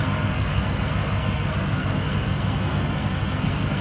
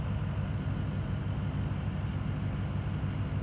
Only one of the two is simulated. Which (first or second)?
first